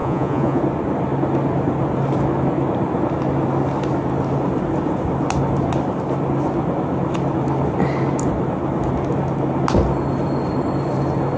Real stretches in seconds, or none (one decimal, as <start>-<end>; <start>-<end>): 0.6-11.4